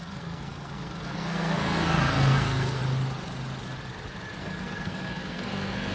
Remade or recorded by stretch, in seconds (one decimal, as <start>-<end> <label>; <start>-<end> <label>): 0.0-2.8 remade; 2.8-4.4 recorded; 4.4-5.9 remade